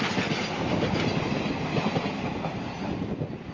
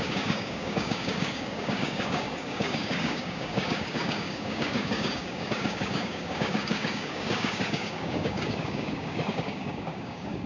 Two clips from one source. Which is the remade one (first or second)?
second